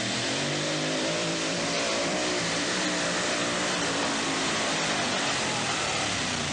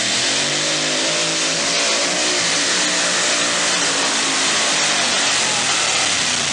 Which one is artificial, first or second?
first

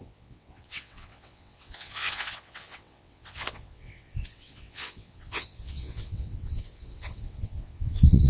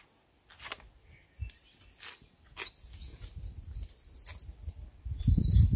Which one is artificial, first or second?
first